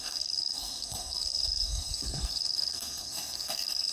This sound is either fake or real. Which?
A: fake